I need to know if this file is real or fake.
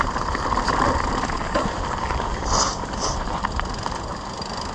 real